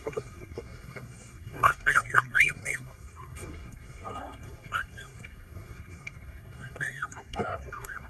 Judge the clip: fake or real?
fake